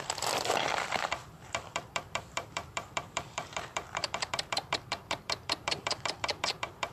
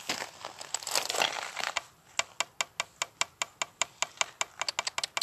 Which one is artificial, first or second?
first